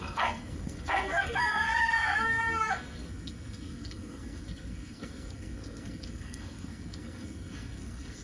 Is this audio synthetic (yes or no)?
yes